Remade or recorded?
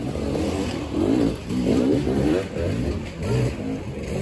recorded